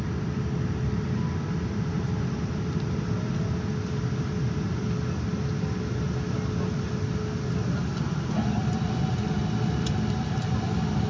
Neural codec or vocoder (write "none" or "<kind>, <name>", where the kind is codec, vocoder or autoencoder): none